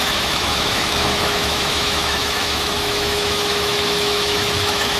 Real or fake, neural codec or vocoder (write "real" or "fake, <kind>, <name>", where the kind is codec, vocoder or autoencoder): fake, autoencoder, DAC-VAE